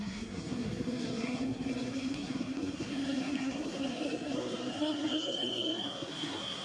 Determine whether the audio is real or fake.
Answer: fake